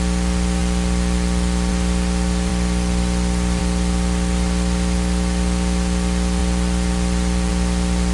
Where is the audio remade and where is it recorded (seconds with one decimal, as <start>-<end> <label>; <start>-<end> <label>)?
0.0-2.5 recorded; 2.5-3.6 remade; 3.6-6.4 recorded; 6.4-7.5 remade; 7.5-8.1 recorded

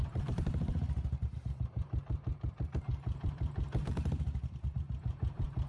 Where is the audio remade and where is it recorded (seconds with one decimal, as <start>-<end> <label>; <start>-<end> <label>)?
0.0-5.7 remade

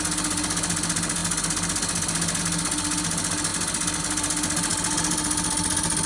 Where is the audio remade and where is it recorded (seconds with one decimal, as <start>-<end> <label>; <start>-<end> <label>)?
0.0-6.1 recorded

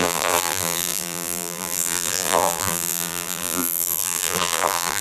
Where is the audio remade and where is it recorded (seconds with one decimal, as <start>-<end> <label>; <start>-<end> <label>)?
0.0-5.0 remade

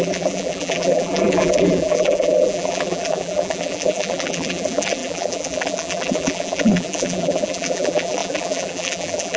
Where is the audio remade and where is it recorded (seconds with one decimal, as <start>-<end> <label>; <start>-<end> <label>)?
0.0-9.4 remade

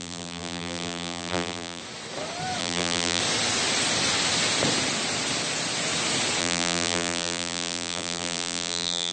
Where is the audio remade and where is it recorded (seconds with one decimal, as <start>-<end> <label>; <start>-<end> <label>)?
0.0-1.8 remade; 1.8-2.6 recorded; 2.6-3.2 remade; 3.2-6.4 recorded; 6.4-9.1 remade

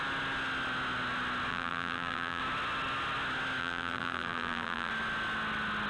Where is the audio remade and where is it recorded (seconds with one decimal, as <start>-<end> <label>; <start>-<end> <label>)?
0.0-1.5 recorded; 1.5-2.4 remade; 2.4-3.6 recorded; 3.6-4.9 remade; 4.9-5.9 recorded